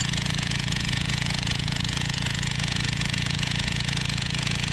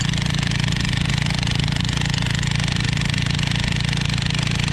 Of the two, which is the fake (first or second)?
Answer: first